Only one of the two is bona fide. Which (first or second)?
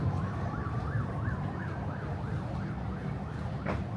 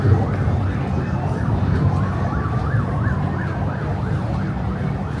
second